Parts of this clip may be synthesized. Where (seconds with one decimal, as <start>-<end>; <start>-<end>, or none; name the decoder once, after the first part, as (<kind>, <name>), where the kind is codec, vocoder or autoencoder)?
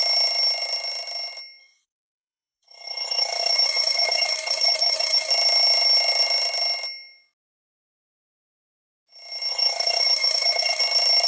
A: 1.6-5.3 (autoencoder, DAC-VAE); 9.5-10.8